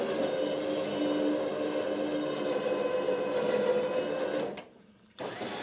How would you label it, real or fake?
real